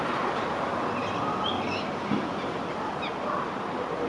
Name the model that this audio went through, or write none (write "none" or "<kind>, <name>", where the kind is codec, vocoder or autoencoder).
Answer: none